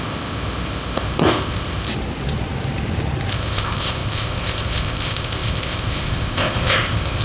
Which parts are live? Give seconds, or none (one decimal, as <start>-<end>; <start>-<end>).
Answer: 1.9-3.3